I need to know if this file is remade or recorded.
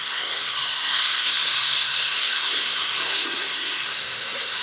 remade